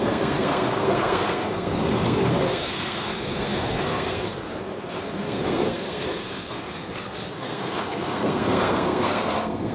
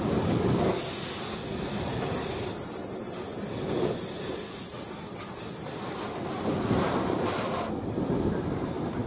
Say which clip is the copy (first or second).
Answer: first